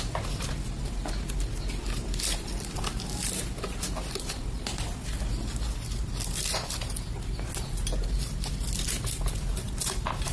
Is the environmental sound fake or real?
real